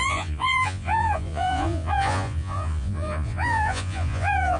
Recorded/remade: remade